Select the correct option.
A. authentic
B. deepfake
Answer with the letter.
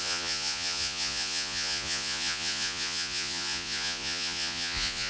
B